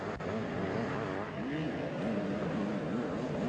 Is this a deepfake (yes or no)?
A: no